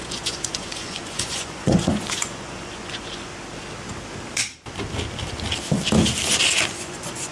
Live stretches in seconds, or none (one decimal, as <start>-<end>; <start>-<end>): 3.3-6.8